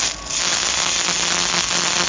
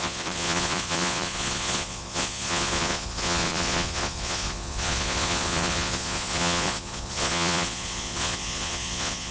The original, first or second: first